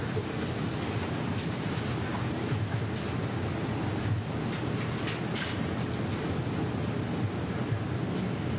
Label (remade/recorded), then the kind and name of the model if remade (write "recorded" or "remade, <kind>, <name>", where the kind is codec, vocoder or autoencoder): recorded